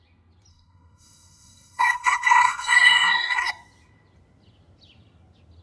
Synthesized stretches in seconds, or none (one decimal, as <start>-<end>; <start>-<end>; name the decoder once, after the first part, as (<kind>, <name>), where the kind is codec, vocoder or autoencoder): 0.5-3.5 (codec, SNAC)